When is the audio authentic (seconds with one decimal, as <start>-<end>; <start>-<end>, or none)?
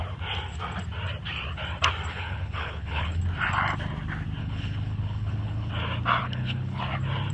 0.0-2.1; 3.2-4.4; 5.7-6.2; 6.8-7.3